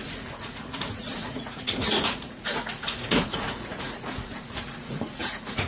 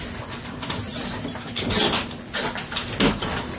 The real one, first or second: second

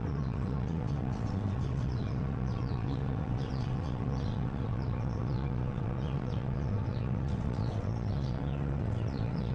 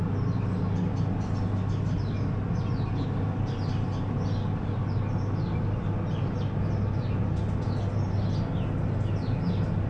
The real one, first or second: second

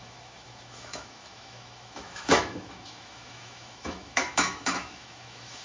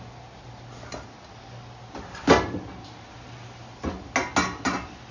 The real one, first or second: second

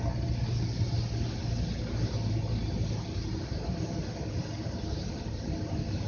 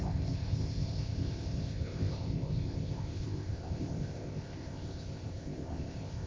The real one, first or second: first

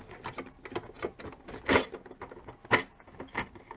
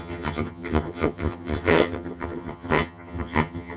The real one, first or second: first